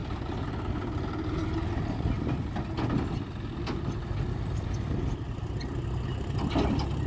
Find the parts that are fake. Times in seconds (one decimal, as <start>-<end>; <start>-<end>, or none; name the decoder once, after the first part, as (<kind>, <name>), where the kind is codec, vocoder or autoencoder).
4.3-7.1 (vocoder, BigVGAN v2)